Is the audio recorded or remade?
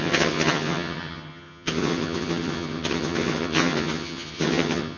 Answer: remade